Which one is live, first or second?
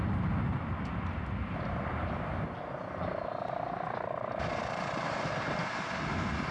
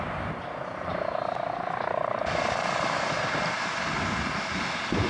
first